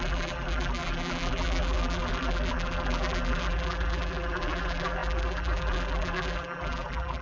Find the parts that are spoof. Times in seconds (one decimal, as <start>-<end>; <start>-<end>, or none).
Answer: 0.0-7.2

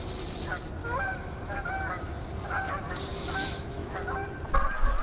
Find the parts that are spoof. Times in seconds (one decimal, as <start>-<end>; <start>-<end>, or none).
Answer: 0.8-1.7; 3.1-3.9

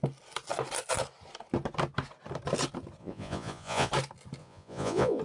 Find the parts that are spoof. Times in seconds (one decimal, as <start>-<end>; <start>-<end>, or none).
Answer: 3.0-3.9; 4.4-5.2